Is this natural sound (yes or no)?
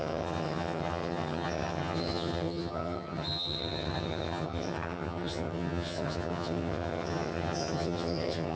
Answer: no